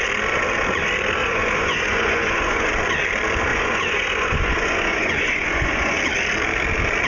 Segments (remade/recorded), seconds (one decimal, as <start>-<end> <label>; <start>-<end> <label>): 0.0-1.2 recorded; 1.2-2.7 remade; 2.7-3.5 recorded; 3.5-6.0 remade; 6.0-7.1 recorded